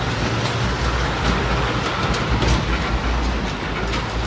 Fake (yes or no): no